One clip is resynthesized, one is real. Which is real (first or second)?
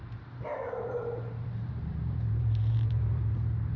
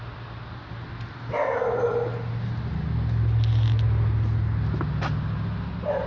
second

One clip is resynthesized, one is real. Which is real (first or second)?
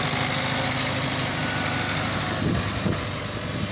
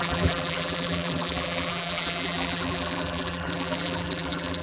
first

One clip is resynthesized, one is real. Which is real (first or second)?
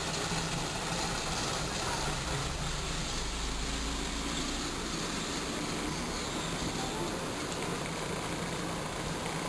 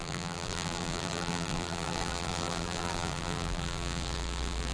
first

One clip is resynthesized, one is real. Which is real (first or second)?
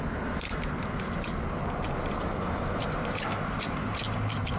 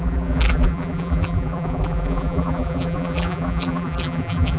first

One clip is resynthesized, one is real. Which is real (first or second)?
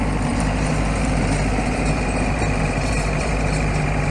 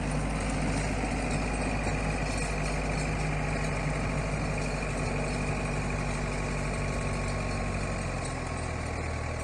second